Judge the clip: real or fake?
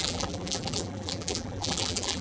fake